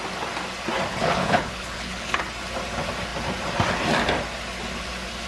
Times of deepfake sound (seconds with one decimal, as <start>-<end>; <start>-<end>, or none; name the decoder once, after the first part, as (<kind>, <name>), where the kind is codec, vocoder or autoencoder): 0.9-2.2 (codec, HILCodec)